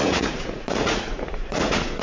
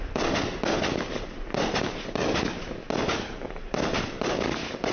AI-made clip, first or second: first